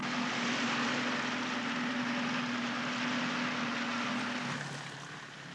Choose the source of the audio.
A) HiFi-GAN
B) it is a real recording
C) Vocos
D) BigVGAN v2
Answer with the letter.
B